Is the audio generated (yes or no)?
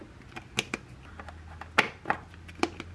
no